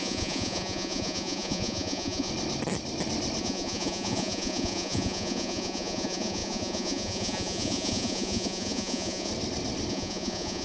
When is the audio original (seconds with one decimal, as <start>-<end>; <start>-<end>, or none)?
2.3-3.4; 9.3-9.9